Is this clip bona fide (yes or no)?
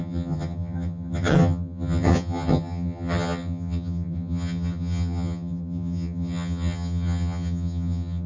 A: no